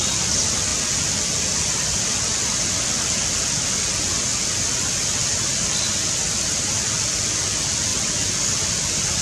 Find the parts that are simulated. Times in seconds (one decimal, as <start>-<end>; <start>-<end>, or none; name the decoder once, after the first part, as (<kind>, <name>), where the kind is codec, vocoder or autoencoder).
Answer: none